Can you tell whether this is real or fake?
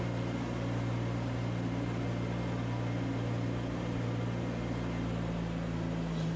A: real